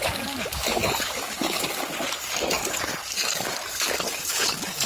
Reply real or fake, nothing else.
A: fake